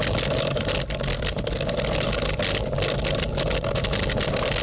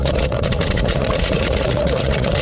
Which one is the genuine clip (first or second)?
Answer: first